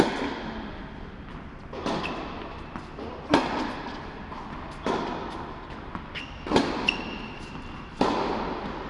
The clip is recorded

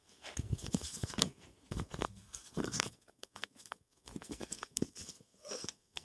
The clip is remade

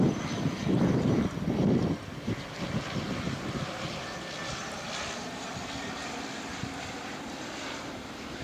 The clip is remade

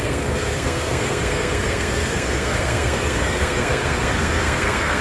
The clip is remade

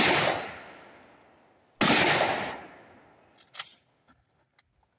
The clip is recorded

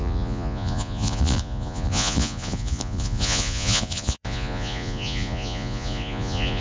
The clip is remade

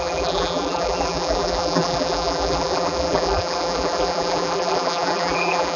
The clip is remade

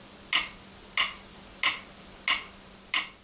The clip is recorded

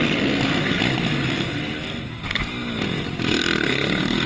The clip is recorded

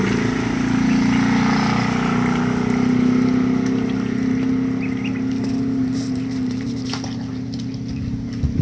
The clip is recorded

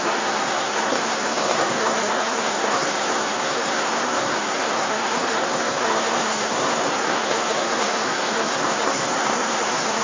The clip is remade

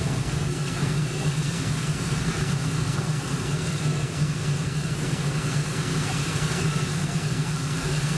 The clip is remade